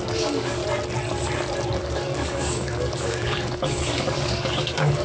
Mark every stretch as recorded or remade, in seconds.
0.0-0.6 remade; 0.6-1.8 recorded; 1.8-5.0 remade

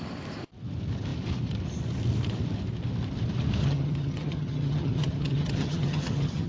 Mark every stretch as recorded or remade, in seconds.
0.0-3.6 recorded; 3.6-6.5 remade